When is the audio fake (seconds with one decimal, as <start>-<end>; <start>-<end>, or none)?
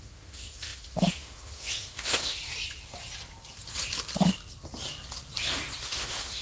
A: 0.0-2.4; 5.8-6.4